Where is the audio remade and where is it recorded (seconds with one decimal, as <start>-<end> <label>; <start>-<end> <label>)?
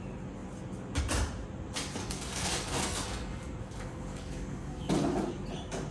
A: 0.0-2.0 recorded; 2.0-4.9 remade; 4.9-5.9 recorded